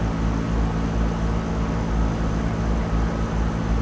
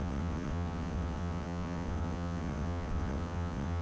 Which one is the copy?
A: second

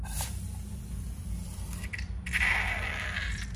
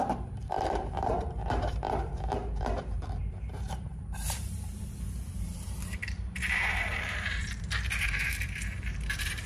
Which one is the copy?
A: second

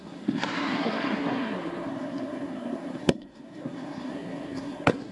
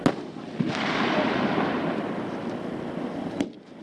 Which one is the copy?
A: first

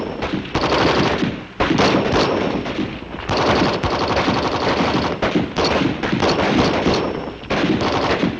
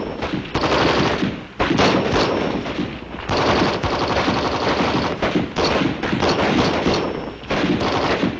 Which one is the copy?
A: first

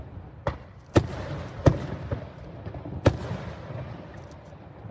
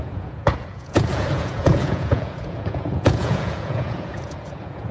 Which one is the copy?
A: second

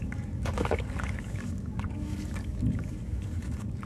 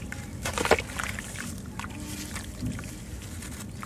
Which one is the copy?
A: first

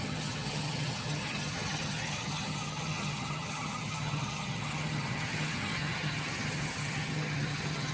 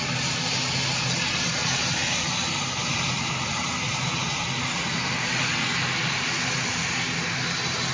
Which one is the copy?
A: first